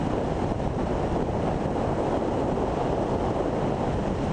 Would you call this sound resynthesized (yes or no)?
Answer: no